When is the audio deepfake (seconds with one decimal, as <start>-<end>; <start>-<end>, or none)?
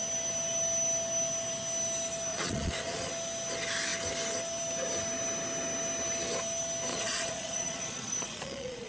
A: 2.3-3.1; 6.9-8.9